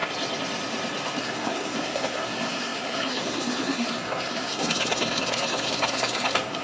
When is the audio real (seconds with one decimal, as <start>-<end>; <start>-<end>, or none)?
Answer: 0.0-1.2